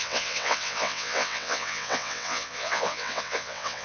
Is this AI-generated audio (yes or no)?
yes